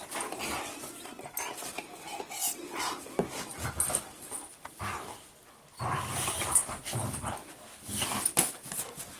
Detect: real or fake real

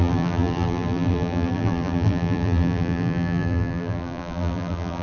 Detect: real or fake fake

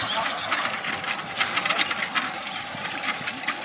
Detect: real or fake real